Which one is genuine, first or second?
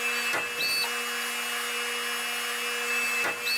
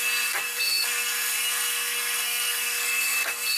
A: first